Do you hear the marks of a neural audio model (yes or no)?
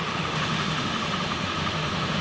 yes